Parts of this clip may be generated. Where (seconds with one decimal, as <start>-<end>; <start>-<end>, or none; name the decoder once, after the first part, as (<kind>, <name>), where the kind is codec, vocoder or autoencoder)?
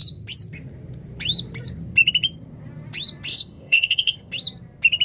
3.3-4.3 (codec, ZipCodec)